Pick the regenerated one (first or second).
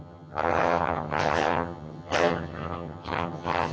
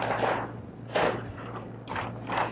first